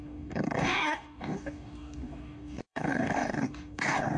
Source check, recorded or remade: remade